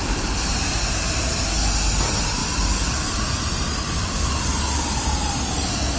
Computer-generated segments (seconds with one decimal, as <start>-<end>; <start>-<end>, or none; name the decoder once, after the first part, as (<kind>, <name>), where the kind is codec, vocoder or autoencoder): 0.0-1.0 (vocoder, BigVGAN v2)